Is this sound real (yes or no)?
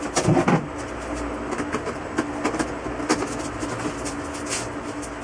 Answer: yes